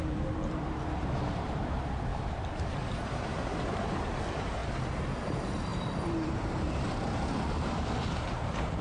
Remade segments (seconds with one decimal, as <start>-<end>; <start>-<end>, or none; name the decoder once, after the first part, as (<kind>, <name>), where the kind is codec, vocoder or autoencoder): 0.0-4.6 (vocoder, BigVGAN v2); 5.2-8.8